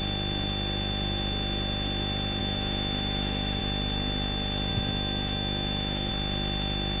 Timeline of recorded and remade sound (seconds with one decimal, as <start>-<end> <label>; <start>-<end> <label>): 0.0-2.4 recorded; 2.4-3.6 remade; 3.6-4.7 recorded; 4.7-6.1 remade; 6.1-7.0 recorded

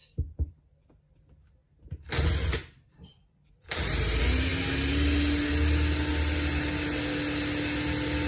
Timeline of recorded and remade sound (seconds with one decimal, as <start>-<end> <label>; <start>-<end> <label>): 0.0-8.3 recorded

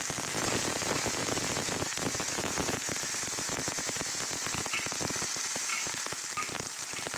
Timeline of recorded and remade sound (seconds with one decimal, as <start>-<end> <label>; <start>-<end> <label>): 0.0-1.2 recorded; 1.2-4.2 remade; 4.2-5.7 recorded; 5.7-6.2 remade; 6.2-7.2 recorded

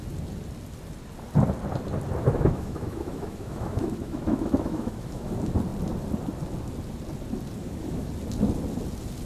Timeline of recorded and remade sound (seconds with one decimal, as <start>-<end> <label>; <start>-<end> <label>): 0.0-2.2 recorded; 2.2-5.3 remade; 5.3-7.6 recorded; 7.6-8.1 remade; 8.1-9.3 recorded